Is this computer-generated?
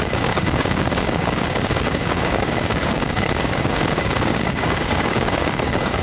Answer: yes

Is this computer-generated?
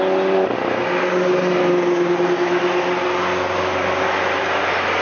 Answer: no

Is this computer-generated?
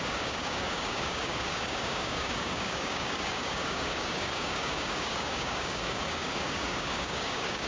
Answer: yes